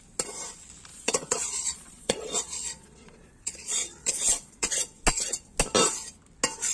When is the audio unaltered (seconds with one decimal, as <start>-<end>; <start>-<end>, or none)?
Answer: 0.0-0.9; 4.7-6.7